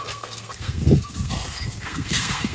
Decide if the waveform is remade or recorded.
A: remade